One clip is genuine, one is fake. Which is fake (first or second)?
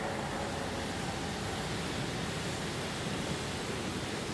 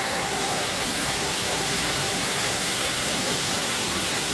second